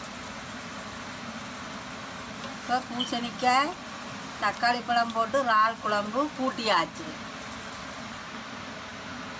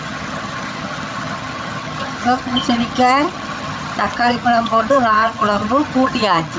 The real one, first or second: first